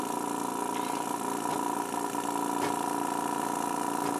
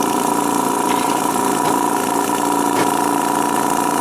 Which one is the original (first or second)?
first